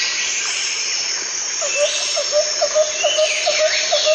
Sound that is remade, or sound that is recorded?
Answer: recorded